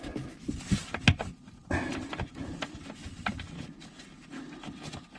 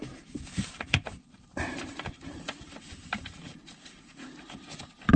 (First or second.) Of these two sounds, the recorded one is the first